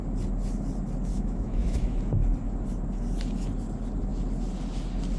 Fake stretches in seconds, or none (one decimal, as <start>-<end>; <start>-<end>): 1.1-2.0